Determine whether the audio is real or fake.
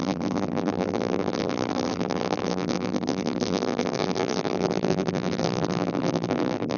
fake